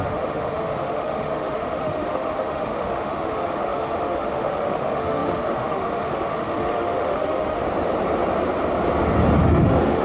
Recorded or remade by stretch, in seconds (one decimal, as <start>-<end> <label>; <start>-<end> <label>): 0.0-7.6 remade; 7.6-9.5 recorded; 9.5-10.0 remade